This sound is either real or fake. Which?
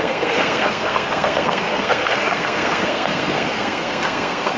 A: fake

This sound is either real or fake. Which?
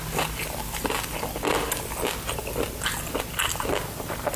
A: real